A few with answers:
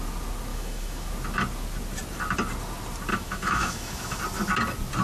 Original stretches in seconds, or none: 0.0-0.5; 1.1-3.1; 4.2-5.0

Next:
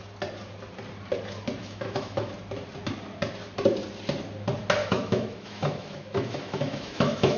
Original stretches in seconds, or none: 0.0-1.6; 2.3-4.8

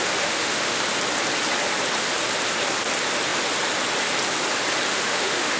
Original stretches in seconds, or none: 0.8-4.9

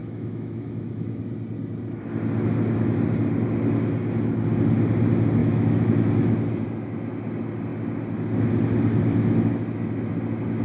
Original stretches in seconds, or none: 1.2-5.4; 6.1-10.6

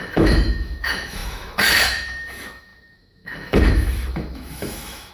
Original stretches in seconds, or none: none

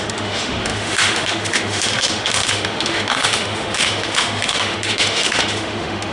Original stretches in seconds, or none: none

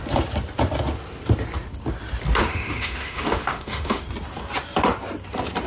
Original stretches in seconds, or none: 0.0-2.4; 4.0-5.7

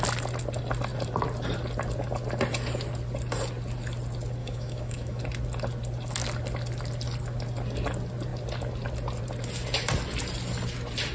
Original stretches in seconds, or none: 0.0-4.4; 5.2-11.1